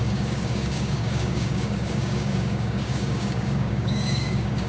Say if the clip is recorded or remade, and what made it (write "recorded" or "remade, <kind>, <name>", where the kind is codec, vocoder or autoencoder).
remade, codec, DAC